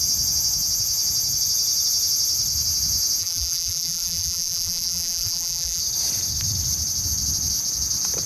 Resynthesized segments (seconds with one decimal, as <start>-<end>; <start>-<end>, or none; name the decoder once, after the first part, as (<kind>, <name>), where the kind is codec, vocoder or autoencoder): 3.2-5.8 (vocoder, BigVGAN v2)